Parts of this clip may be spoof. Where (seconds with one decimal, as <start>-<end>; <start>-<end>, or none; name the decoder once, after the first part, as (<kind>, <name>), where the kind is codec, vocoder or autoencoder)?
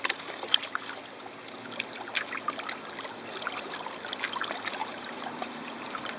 4.8-6.2 (vocoder, BigVGAN v2)